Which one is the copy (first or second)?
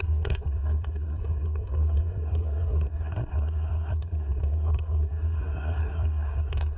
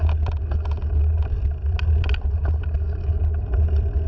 first